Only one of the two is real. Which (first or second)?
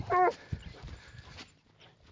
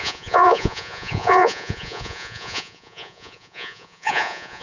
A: first